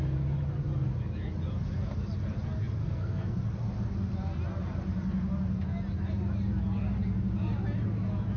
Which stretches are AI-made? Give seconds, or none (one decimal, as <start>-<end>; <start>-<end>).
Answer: 2.8-3.4